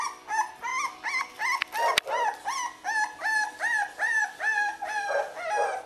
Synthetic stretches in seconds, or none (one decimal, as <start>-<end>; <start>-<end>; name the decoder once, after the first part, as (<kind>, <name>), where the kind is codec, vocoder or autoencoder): none